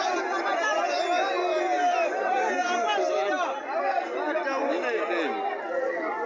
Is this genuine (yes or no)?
yes